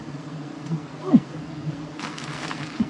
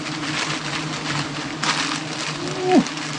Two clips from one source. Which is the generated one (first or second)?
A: first